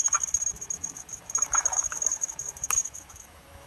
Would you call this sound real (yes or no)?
no